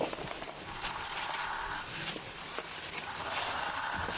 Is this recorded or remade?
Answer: remade